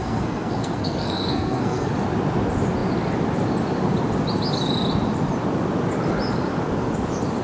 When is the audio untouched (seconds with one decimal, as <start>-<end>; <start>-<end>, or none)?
1.9-7.4